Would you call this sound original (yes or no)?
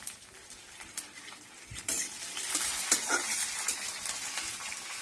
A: yes